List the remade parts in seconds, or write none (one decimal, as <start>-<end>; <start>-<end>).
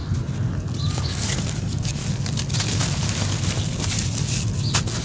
0.9-2.0